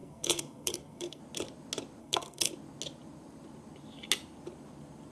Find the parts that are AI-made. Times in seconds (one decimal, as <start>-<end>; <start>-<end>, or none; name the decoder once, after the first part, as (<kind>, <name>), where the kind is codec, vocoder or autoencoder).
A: 0.0-1.2 (codec, SNAC); 2.0-2.5